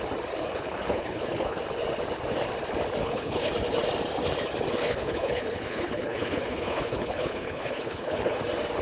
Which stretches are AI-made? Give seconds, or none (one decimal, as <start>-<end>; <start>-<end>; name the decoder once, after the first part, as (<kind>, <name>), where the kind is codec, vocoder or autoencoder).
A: 0.4-1.6 (codec, HILCodec); 3.0-3.5; 4.8-8.4